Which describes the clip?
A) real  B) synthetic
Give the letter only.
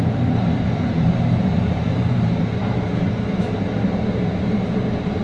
B